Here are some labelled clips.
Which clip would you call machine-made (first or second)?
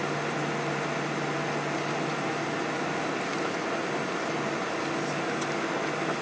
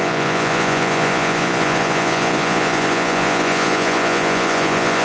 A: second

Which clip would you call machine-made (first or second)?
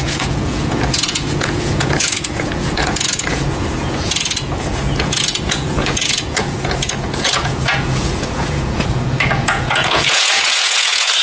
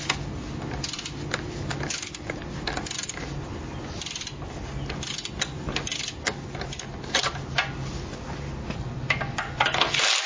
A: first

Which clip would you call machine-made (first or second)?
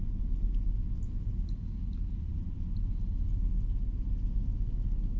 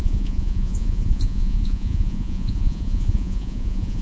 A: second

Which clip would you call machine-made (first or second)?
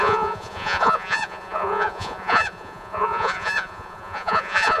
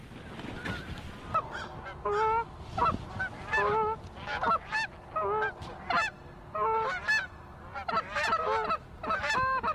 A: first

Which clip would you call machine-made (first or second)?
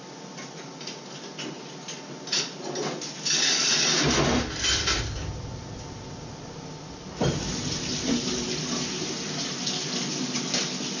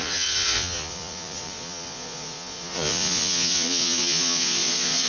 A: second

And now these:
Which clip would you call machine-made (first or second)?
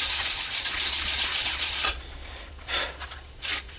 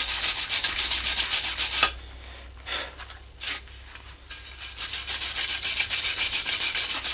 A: first